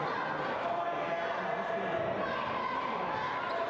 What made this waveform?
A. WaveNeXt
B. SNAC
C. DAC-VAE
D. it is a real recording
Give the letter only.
D